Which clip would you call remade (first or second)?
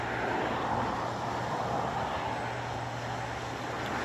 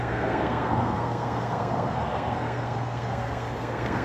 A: second